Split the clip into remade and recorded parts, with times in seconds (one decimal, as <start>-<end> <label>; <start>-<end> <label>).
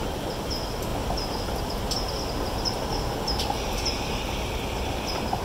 0.0-5.4 recorded